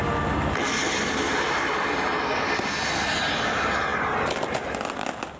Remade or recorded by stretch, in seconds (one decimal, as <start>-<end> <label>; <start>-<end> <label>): 0.0-5.4 recorded